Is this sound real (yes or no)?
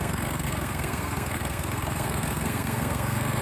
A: no